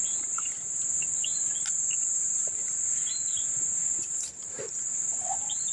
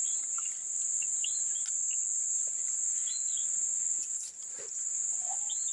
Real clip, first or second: second